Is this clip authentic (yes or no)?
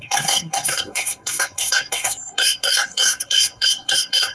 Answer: no